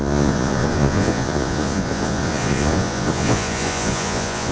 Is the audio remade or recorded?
remade